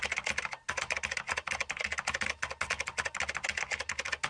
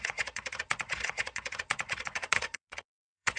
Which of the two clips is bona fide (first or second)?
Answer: first